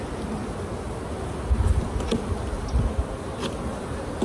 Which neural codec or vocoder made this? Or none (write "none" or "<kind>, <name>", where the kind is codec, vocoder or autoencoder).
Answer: none